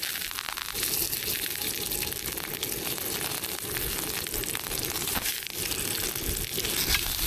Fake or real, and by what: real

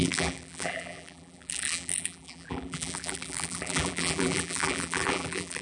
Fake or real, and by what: fake, vocoder, BigVGAN v2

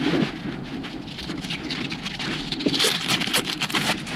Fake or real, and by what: real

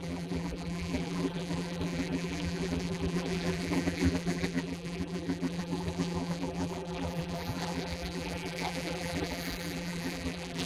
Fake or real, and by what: fake, vocoder, BigVGAN v2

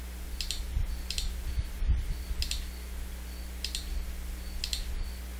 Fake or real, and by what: real